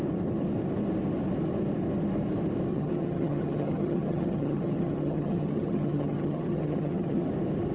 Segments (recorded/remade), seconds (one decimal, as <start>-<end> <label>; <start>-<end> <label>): 0.0-2.7 recorded; 2.7-7.3 remade; 7.3-7.7 recorded